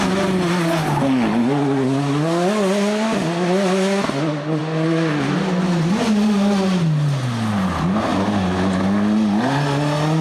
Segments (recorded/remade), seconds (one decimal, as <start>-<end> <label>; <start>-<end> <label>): 0.0-10.2 recorded